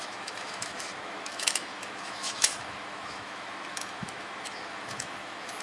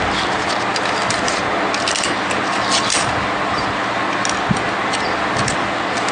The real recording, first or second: second